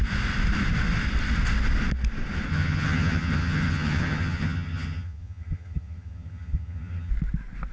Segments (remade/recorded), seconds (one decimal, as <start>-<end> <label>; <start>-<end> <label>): 0.0-2.5 recorded; 2.5-7.1 remade; 7.1-7.7 recorded